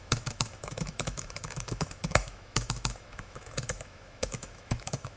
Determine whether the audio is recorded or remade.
remade